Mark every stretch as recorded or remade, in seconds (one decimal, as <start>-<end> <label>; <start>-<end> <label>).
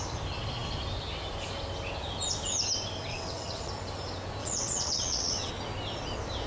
0.0-3.1 recorded; 3.1-3.7 remade; 3.7-4.4 recorded; 4.4-5.5 remade; 5.5-6.5 recorded